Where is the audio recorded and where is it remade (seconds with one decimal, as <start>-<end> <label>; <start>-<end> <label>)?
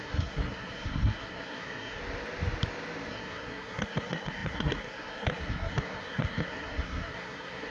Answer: 0.0-2.0 remade; 2.0-3.1 recorded; 3.1-7.7 remade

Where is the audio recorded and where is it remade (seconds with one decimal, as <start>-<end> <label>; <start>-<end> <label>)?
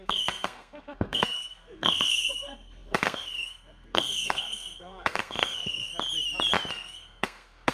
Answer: 0.0-5.9 remade; 5.9-6.7 recorded; 6.7-7.7 remade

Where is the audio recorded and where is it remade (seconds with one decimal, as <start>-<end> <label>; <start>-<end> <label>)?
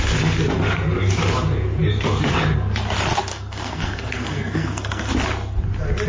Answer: 0.0-3.3 recorded; 3.3-5.1 remade; 5.1-6.1 recorded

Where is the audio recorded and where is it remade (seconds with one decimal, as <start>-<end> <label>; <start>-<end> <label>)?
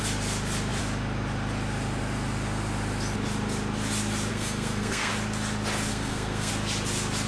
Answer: 0.0-4.3 recorded; 4.3-5.1 remade; 5.1-5.9 recorded; 5.9-6.5 remade; 6.5-7.3 recorded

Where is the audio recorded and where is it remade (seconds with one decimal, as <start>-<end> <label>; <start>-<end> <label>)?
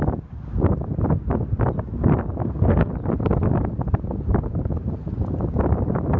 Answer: 0.0-2.4 recorded; 2.4-2.9 remade; 2.9-6.2 recorded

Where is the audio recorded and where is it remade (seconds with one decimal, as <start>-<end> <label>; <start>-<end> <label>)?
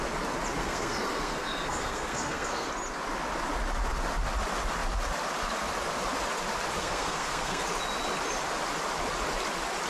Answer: 0.0-0.6 recorded; 0.6-2.7 remade; 2.7-6.8 recorded; 6.8-7.6 remade; 7.6-9.9 recorded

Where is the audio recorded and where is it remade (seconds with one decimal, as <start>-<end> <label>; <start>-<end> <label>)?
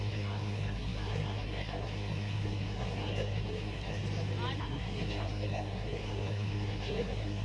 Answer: 0.0-4.0 remade; 4.0-4.6 recorded; 4.6-7.4 remade